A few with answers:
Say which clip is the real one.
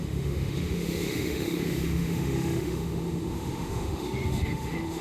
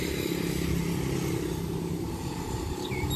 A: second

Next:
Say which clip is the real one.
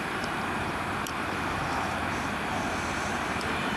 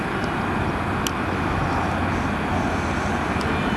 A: second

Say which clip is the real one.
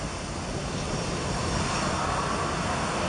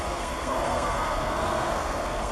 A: first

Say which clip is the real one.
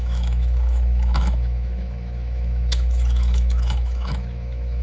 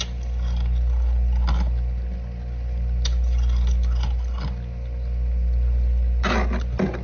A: second